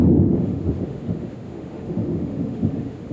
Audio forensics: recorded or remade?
remade